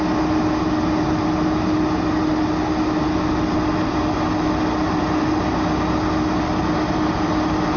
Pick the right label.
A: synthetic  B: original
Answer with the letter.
B